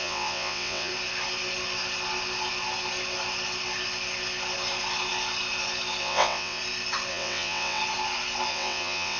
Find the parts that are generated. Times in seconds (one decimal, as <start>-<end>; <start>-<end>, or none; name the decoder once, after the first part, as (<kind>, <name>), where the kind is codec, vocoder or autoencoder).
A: 0.0-0.9 (vocoder, WaveNeXt); 6.0-6.6; 7.1-7.8; 8.5-9.2